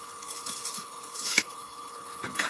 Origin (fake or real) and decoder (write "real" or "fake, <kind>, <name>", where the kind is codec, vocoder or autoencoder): fake, codec, HILCodec